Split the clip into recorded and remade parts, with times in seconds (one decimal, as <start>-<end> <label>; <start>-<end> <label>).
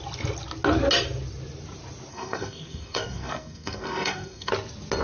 0.0-2.1 recorded; 2.1-4.5 remade; 4.5-5.0 recorded